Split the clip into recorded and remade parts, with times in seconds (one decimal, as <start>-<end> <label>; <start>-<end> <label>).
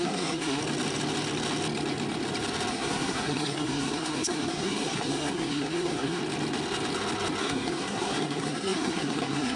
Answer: 0.0-0.6 remade; 0.6-2.7 recorded; 2.7-6.2 remade; 6.2-7.4 recorded; 7.4-9.6 remade